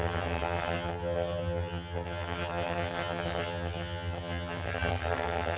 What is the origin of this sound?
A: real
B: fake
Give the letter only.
B